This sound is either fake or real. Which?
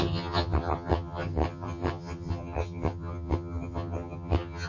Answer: fake